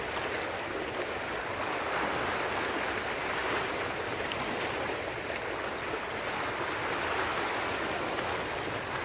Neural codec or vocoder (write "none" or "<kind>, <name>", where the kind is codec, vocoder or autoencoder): none